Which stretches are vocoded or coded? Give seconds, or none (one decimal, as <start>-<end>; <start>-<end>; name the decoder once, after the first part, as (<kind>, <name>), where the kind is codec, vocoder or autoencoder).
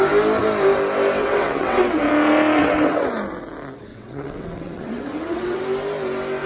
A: 1.2-2.0 (vocoder, WaveNeXt); 2.6-3.1; 3.9-5.6